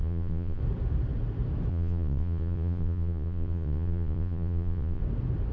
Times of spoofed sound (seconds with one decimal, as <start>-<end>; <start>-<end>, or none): 0.0-0.6; 1.7-5.0